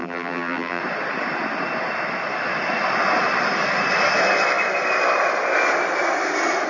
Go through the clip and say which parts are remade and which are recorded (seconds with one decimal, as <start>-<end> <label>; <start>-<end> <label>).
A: 0.0-0.8 remade; 0.8-6.7 recorded